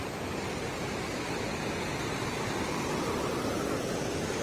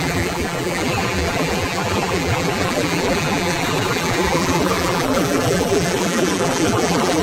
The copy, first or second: second